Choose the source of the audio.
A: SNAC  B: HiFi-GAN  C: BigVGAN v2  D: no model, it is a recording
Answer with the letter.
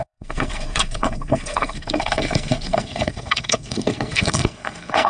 A